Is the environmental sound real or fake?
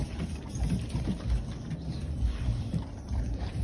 fake